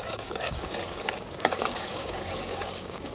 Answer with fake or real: fake